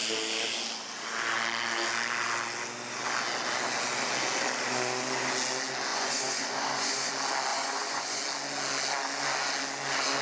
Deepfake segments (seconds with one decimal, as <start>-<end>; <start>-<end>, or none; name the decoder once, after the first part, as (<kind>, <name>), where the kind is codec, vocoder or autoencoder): 5.9-7.1 (vocoder, Vocos); 7.5-8.2